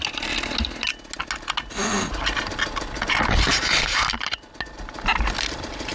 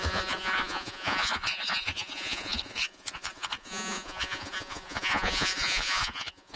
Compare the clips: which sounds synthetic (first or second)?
second